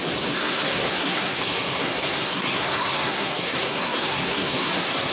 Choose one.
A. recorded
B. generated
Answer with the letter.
B